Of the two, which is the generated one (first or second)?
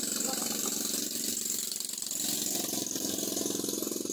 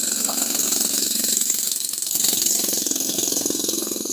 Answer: second